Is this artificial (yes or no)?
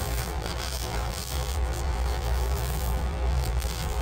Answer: yes